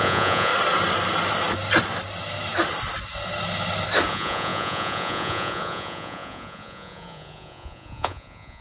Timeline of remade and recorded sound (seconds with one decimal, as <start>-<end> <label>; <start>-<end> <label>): 0.0-0.5 remade; 0.5-4.1 recorded; 4.1-8.6 remade